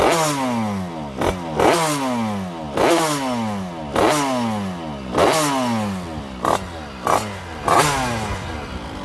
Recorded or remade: recorded